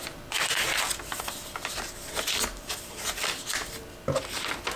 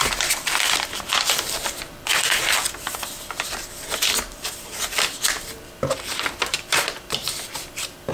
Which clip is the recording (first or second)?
first